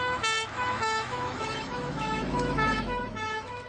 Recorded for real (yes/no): no